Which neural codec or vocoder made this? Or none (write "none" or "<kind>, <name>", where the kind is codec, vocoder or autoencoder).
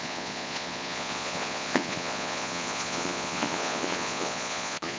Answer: vocoder, Vocos